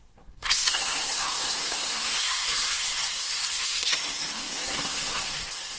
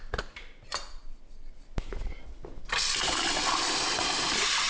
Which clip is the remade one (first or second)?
first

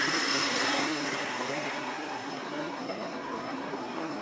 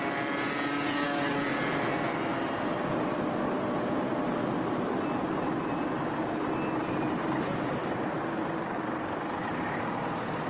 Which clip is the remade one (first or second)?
first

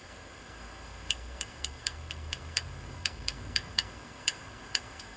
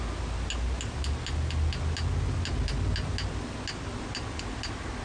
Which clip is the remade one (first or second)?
first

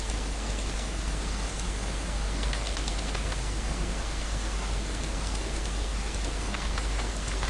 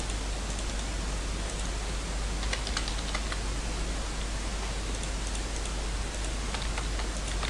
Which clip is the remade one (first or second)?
first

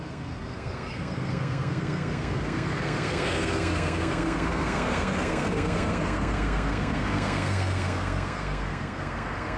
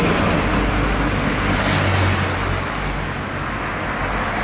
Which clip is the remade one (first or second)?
first